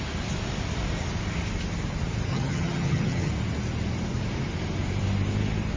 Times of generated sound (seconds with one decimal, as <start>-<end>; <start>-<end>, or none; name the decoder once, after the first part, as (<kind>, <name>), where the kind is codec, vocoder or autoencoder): 2.3-3.3 (vocoder, HiFi-GAN)